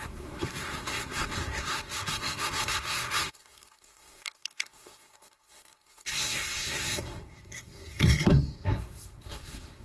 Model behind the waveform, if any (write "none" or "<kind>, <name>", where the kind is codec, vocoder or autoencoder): codec, SNAC